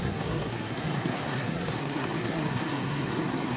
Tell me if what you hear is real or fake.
fake